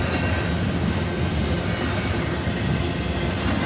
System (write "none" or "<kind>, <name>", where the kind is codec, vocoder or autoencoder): none